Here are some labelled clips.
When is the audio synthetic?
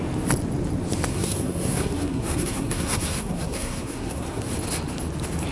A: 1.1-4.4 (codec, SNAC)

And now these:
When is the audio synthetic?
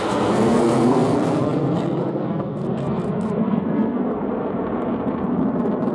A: 0.0-4.2 (codec, SNAC)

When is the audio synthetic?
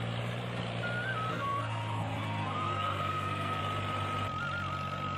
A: 1.3-3.6 (codec, SNAC)